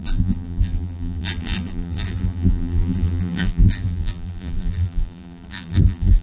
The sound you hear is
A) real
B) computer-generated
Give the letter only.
B